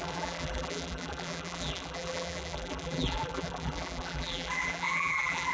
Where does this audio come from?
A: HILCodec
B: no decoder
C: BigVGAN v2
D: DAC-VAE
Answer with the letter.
C